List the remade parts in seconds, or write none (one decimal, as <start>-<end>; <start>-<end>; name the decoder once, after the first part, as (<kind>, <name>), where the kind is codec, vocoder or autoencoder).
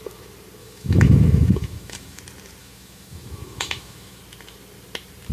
0.6-2.2 (autoencoder, DAC-VAE); 2.6-4.2